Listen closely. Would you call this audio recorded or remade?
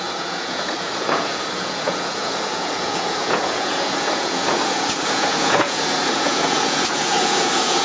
remade